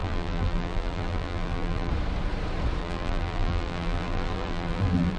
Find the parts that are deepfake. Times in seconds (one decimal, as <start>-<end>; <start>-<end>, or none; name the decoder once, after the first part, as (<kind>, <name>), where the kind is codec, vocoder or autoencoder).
0.0-1.9 (vocoder, BigVGAN v2); 2.8-5.2

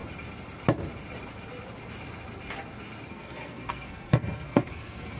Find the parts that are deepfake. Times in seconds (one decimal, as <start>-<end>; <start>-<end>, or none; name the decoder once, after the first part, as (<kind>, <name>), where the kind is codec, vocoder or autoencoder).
3.1-5.2 (codec, SNAC)